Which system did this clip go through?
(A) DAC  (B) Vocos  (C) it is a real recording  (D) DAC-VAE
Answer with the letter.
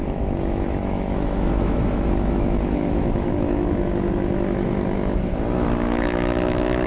D